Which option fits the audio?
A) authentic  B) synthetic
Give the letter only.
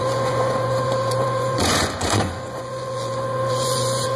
B